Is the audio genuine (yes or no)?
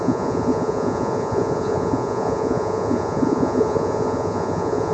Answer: no